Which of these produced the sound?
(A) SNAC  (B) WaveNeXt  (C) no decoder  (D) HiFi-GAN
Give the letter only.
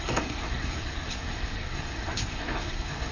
A